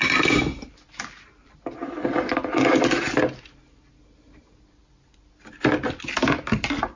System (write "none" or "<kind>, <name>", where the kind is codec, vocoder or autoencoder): none